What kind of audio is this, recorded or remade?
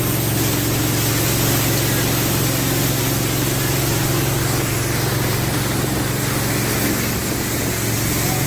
recorded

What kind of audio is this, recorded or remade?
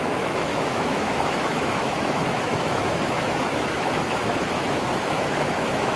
remade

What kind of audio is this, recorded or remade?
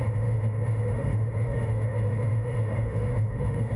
remade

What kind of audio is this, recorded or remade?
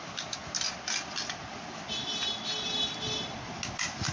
recorded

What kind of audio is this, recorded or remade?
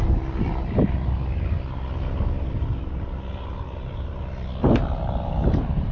recorded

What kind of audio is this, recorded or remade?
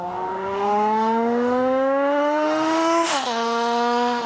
remade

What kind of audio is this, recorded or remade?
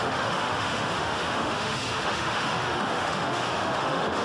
remade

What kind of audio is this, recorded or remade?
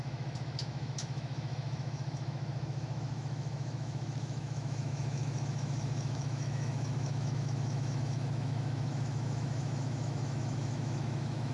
remade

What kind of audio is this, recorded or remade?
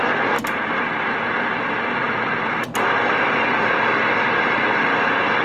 recorded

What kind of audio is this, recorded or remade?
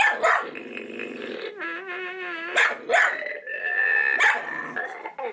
recorded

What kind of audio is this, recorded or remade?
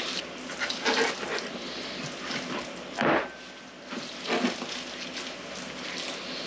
recorded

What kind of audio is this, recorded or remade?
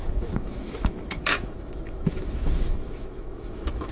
remade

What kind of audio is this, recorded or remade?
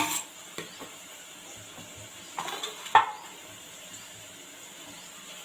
recorded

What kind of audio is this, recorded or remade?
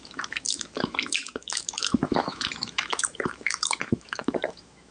remade